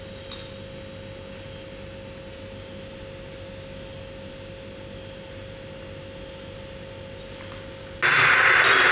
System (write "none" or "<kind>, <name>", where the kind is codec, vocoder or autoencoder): none